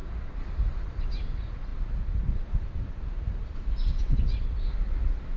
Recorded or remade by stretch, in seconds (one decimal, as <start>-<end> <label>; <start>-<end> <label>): 0.0-5.4 recorded